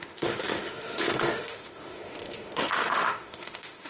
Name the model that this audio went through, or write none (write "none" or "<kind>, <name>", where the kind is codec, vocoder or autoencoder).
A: autoencoder, DAC-VAE